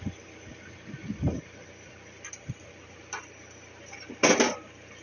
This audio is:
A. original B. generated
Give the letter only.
A